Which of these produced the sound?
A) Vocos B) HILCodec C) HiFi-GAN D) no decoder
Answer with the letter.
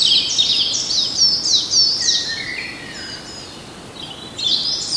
D